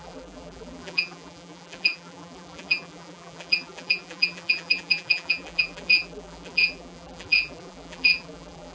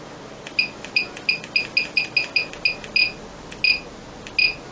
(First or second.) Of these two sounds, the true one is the second